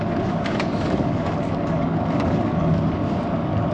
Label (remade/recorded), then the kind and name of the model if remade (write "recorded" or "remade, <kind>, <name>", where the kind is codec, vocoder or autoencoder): remade, codec, DAC